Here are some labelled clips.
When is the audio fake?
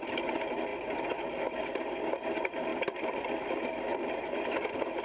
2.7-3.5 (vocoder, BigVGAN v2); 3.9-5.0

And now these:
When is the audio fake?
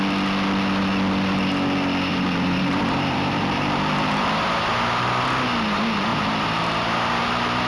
2.1-4.6 (vocoder, BigVGAN v2); 6.1-7.7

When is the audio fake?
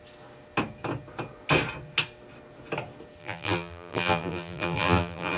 3.2-5.4 (vocoder, BigVGAN v2)